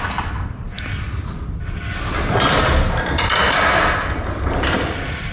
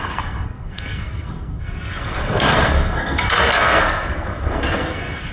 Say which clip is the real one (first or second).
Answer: first